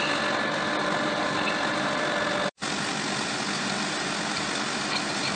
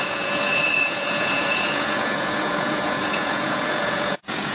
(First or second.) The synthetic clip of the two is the second